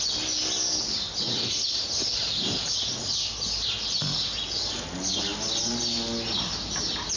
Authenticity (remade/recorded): recorded